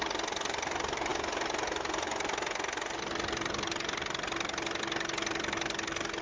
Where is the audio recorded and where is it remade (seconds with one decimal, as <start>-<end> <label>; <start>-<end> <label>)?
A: 0.0-6.2 recorded